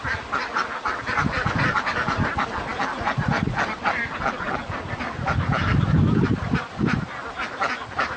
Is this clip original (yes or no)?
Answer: yes